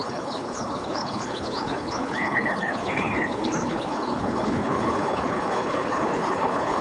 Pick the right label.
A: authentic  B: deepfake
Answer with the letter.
B